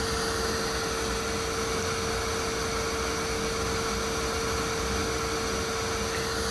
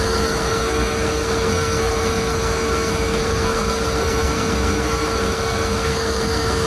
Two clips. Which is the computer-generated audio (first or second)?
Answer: second